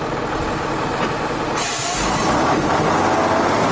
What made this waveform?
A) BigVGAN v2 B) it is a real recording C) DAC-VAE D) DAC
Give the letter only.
B